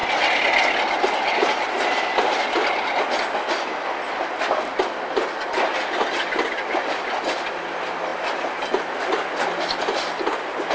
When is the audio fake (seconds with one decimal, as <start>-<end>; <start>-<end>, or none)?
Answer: none